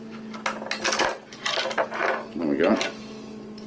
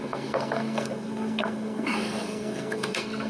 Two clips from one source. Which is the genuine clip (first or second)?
first